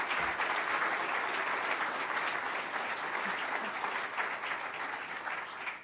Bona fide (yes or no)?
yes